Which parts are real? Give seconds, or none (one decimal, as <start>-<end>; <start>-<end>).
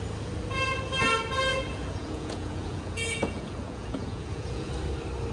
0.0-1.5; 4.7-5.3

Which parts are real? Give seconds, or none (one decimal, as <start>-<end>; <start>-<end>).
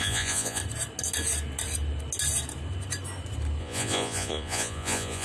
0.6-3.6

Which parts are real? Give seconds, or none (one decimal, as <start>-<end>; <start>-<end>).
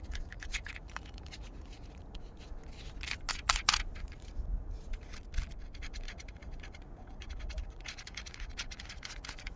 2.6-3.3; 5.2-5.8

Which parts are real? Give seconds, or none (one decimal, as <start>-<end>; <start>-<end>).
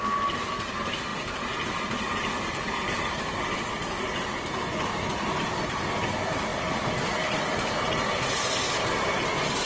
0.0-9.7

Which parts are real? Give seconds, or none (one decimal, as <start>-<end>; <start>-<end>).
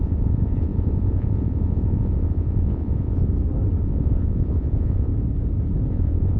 3.3-3.8; 5.1-5.9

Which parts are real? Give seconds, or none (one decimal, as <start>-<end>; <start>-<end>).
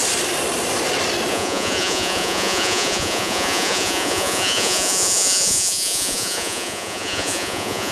0.0-1.3